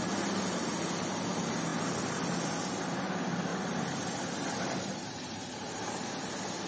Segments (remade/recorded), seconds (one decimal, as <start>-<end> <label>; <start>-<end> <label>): 0.0-3.5 recorded; 3.5-6.1 remade; 6.1-6.7 recorded